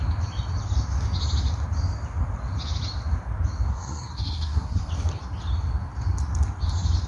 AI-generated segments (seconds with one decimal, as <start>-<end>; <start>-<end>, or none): 3.7-4.9